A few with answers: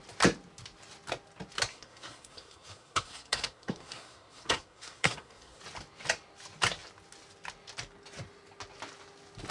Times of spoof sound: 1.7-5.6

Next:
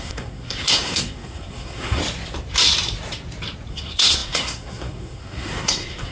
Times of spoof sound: 0.0-2.0; 3.7-6.1

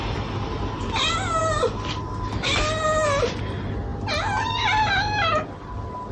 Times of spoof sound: none

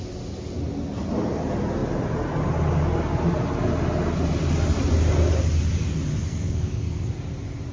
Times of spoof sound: 6.2-7.1

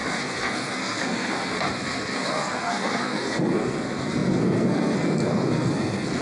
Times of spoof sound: 0.0-6.2

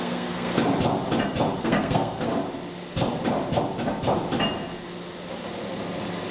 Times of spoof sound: 0.0-0.5; 1.6-2.3